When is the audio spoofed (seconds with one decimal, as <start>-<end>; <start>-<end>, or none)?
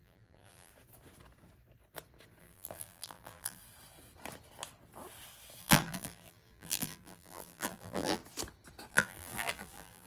0.0-0.7; 2.4-3.6; 5.6-8.2; 8.9-10.1